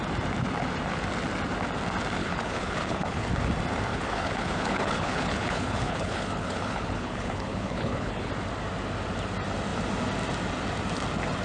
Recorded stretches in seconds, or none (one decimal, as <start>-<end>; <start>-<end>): 0.0-2.2; 3.3-3.9; 8.3-11.4